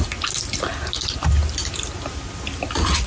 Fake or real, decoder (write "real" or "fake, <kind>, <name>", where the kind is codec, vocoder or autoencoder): real